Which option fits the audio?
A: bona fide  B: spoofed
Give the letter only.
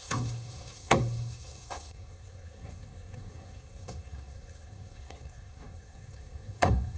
B